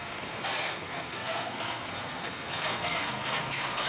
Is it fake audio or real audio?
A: fake